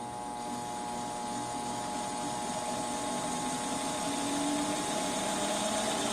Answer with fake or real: real